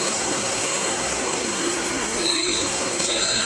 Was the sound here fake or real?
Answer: fake